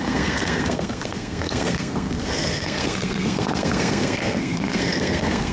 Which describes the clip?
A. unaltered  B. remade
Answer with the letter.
B